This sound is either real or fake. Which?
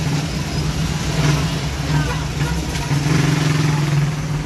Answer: real